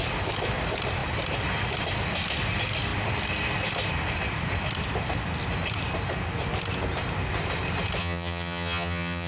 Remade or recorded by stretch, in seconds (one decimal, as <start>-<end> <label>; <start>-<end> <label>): 0.0-8.0 recorded; 8.0-9.3 remade